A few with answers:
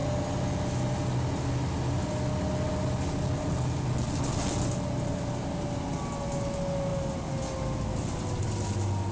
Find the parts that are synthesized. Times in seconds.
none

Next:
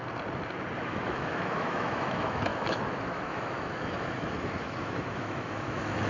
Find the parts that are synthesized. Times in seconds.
0.8-6.1 (autoencoder, DAC-VAE)

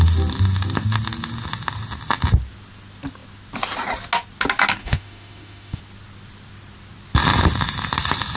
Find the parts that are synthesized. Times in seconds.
4.8-5.8 (autoencoder, DAC-VAE)

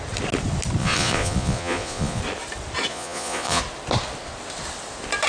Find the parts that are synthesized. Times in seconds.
0.8-2.2 (vocoder, Vocos); 2.9-3.6

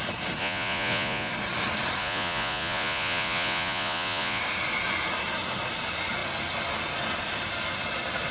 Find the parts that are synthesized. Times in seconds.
0.4-1.3 (vocoder, Vocos); 2.0-4.4

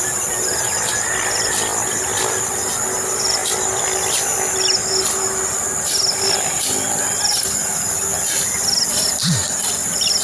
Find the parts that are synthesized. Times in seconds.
none

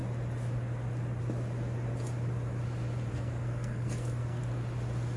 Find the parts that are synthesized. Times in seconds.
3.1-4.4 (codec, SNAC)